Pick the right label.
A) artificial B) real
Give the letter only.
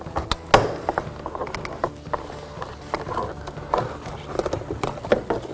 B